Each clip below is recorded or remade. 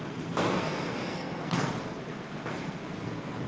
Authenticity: remade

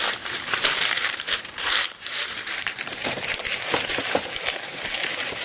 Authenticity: remade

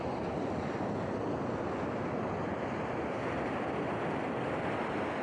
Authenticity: recorded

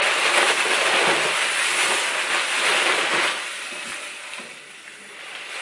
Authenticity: recorded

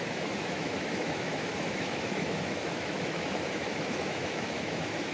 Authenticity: remade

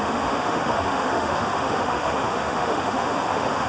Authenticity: remade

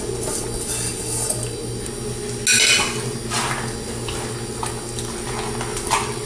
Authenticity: recorded